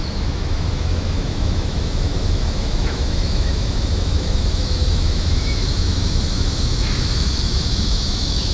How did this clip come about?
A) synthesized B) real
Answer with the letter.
A